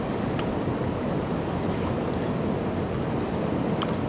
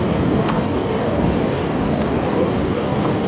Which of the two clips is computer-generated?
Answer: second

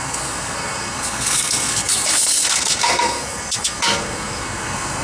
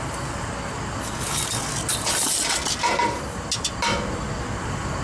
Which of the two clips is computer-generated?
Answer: first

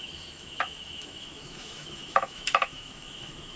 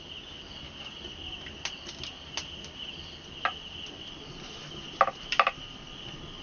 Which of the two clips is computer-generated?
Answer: first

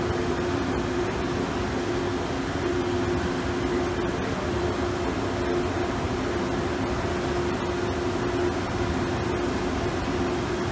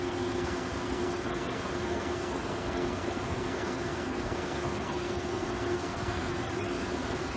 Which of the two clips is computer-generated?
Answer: second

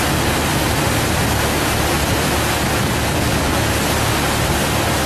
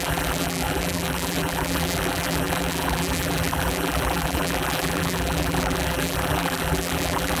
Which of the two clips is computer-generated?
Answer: second